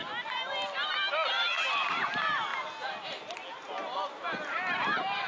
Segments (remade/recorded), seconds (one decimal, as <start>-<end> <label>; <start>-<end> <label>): 0.0-5.3 recorded

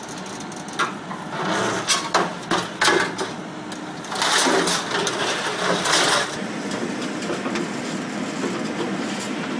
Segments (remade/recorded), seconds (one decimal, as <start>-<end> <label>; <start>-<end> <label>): 0.0-9.6 recorded

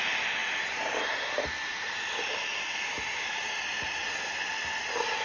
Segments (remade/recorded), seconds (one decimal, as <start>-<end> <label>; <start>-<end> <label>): 0.0-0.4 recorded; 0.4-1.0 remade; 1.0-1.7 recorded; 1.7-3.0 remade; 3.0-5.2 recorded